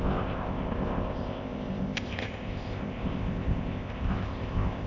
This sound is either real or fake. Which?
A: fake